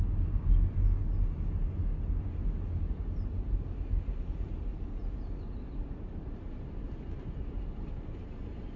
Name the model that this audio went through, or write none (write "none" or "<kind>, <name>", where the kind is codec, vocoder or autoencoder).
none